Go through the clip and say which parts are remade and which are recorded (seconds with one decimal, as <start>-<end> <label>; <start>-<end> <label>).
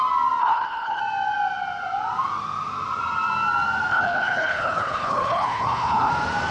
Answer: 0.0-0.4 recorded; 0.4-1.0 remade; 1.0-3.9 recorded; 3.9-6.1 remade; 6.1-6.5 recorded